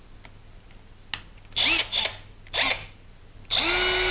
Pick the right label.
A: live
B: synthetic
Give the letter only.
A